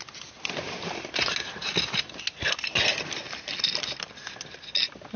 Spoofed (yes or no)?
no